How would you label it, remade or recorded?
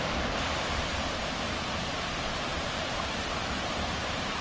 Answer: remade